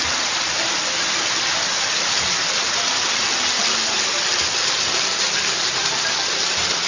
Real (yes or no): yes